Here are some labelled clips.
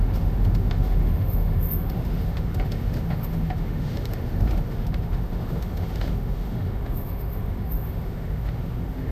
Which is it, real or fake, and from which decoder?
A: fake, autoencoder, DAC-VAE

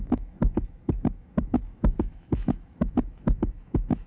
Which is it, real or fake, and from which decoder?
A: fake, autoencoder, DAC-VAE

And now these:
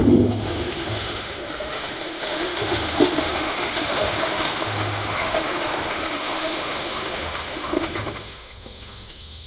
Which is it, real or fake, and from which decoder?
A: fake, autoencoder, DAC-VAE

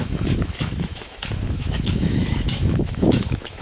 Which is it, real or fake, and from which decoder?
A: fake, autoencoder, DAC-VAE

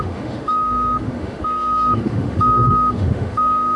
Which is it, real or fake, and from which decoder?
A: fake, autoencoder, DAC-VAE